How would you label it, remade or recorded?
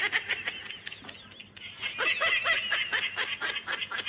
recorded